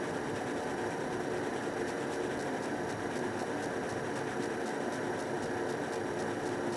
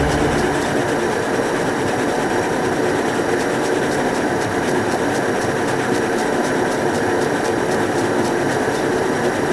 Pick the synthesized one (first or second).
second